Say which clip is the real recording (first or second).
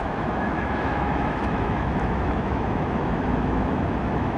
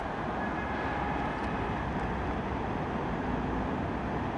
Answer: second